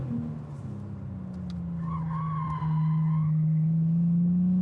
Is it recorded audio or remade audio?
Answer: recorded